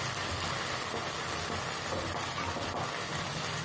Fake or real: real